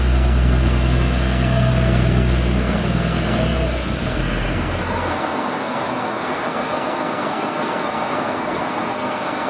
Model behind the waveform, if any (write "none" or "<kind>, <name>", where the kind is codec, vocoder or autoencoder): codec, SNAC